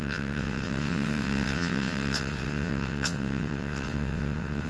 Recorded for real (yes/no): no